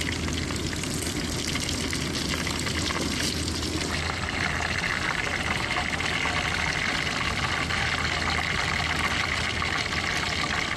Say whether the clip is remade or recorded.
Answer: recorded